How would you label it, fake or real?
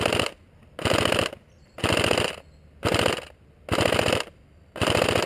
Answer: real